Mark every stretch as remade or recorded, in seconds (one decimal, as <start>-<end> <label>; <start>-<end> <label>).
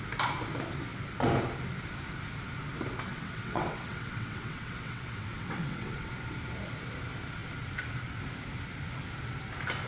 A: 0.0-3.1 recorded; 3.1-6.1 remade; 6.1-9.9 recorded